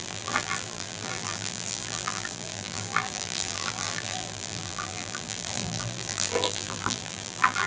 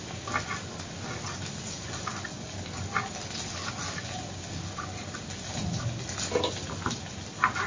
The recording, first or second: second